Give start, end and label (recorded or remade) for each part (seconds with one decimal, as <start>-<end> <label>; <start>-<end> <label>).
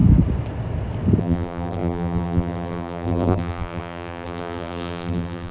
0.0-1.2 recorded; 1.2-5.5 remade